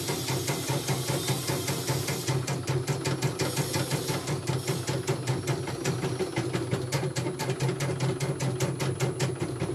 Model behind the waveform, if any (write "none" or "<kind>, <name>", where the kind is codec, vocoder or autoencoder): none